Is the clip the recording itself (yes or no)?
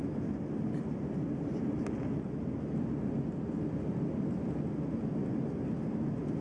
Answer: yes